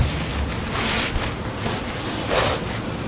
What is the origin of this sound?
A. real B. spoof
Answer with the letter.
A